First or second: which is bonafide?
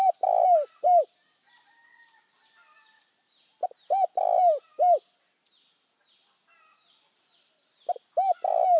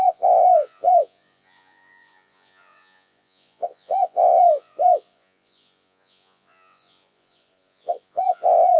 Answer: first